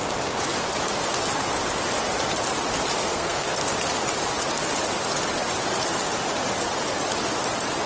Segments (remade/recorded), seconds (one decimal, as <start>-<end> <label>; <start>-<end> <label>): 0.0-3.0 recorded; 3.0-3.7 remade; 3.7-7.9 recorded

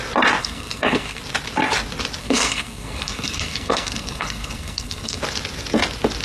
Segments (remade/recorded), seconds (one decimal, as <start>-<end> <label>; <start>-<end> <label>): 0.0-0.4 recorded; 0.4-1.2 remade; 1.2-2.2 recorded; 2.2-5.2 remade; 5.2-6.2 recorded

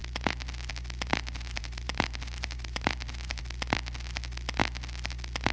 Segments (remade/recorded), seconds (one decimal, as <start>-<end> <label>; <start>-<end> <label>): 0.0-1.1 recorded; 1.1-3.4 remade; 3.4-5.5 recorded

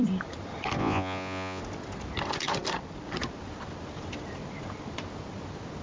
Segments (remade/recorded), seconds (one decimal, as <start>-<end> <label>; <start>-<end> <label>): 0.0-0.8 recorded; 0.8-1.6 remade; 1.6-5.8 recorded

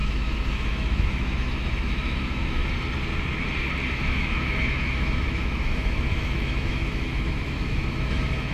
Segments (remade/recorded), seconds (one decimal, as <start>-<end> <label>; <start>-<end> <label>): 0.0-2.6 remade; 2.6-3.9 recorded; 3.9-8.5 remade

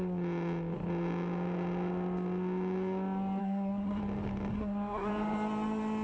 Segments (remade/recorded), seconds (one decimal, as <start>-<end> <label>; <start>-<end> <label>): 0.0-3.4 recorded; 3.4-4.0 remade; 4.0-4.5 recorded; 4.5-5.1 remade; 5.1-6.0 recorded

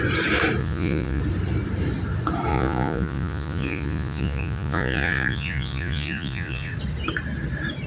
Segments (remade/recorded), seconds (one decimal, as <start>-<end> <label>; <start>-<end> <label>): 0.0-0.6 recorded; 0.6-1.2 remade; 1.2-2.5 recorded; 2.5-6.7 remade; 6.7-7.9 recorded